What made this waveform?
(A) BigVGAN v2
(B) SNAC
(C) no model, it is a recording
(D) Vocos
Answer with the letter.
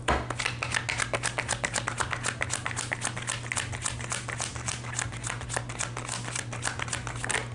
C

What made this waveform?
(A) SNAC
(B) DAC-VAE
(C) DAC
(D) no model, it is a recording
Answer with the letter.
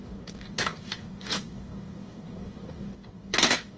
C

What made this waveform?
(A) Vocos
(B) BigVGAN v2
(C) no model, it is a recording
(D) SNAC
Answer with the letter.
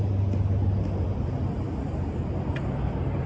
C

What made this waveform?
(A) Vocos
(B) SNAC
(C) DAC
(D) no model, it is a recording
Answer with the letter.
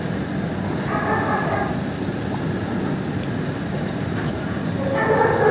D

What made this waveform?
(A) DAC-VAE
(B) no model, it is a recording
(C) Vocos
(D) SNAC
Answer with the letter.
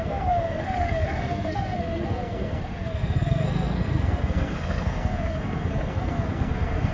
D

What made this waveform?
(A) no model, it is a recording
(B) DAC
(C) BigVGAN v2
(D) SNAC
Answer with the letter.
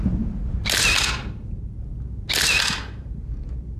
A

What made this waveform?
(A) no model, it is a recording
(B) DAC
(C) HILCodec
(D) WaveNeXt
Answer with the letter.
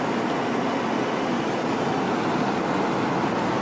A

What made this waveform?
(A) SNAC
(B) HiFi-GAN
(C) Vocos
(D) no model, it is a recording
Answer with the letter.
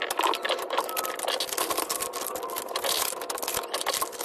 D